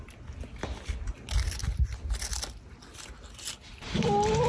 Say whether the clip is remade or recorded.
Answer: recorded